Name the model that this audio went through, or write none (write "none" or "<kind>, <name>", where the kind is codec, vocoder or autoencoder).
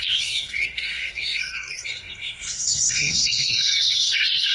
codec, SNAC